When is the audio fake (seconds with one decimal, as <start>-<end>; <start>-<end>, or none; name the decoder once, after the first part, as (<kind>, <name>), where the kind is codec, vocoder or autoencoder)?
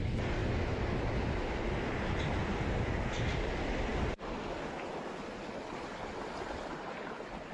none